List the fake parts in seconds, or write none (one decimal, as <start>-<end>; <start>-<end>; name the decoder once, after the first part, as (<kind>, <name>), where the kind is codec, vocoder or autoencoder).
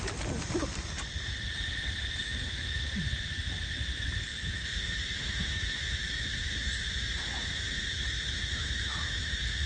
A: 2.2-2.9 (autoencoder, DAC-VAE); 4.3-9.7